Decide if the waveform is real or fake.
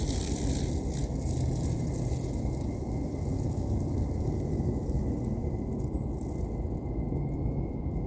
real